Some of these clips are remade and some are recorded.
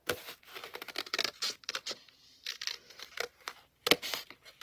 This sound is remade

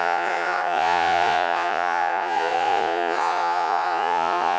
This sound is remade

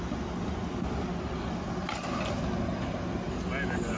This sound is recorded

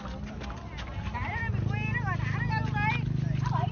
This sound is recorded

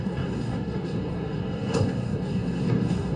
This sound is remade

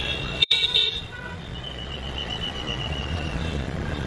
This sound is remade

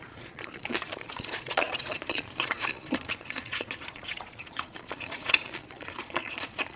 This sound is remade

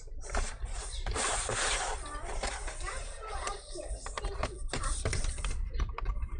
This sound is remade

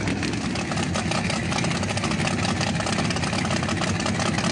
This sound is recorded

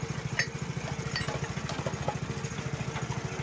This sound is recorded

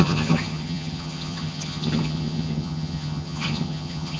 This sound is remade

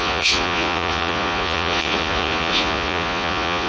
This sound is remade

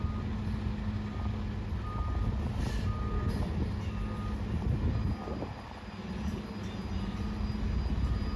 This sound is recorded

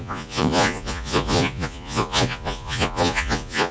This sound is remade